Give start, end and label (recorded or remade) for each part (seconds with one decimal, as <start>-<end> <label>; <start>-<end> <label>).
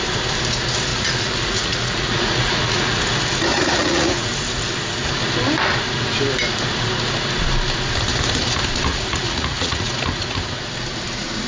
0.0-0.9 recorded; 0.9-3.0 remade; 3.0-3.5 recorded; 3.5-4.3 remade; 4.3-8.9 recorded; 8.9-9.9 remade; 9.9-11.5 recorded